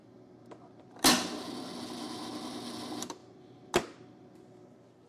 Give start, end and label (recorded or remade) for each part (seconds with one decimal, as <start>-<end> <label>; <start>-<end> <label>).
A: 0.0-5.1 recorded